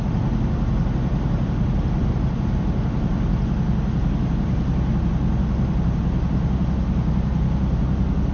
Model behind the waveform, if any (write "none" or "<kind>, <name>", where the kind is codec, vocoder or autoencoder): none